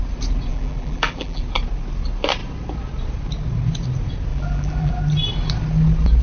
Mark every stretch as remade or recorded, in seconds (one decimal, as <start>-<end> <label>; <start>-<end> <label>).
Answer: 0.0-0.5 recorded; 0.5-1.4 remade; 1.4-4.3 recorded; 4.3-4.9 remade; 4.9-6.2 recorded